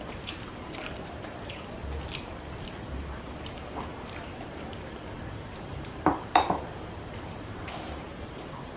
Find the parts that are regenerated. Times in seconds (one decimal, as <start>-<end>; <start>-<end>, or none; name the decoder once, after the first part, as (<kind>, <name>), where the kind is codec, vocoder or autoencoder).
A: 0.0-1.8 (vocoder, BigVGAN v2); 2.6-8.8